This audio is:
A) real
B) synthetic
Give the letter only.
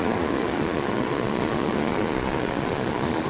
B